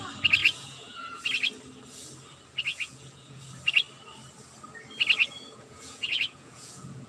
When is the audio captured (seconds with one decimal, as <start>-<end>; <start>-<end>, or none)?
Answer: 0.0-0.4; 1.2-2.7; 3.4-5.2